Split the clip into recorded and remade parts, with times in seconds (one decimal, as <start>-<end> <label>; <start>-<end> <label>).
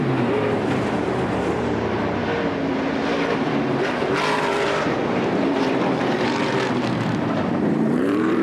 0.0-2.2 remade; 2.2-2.7 recorded; 2.7-8.4 remade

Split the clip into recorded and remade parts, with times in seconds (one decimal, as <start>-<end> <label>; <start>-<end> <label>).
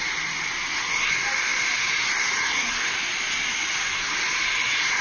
0.0-5.0 recorded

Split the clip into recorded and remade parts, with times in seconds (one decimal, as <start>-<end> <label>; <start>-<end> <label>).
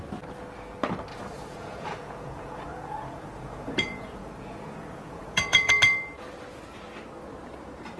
0.0-1.1 recorded; 1.1-5.7 remade; 5.7-8.0 recorded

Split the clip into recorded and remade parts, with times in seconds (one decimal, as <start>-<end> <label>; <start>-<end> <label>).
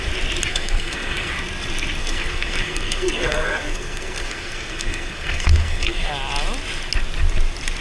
0.0-0.5 recorded; 0.5-1.3 remade; 1.3-2.0 recorded; 2.0-6.1 remade; 6.1-7.8 recorded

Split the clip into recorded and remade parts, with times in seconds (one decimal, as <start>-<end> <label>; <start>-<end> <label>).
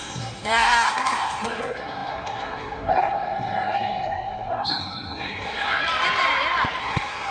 0.0-5.8 remade; 5.8-6.8 recorded; 6.8-7.3 remade